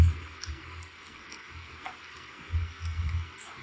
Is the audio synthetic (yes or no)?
yes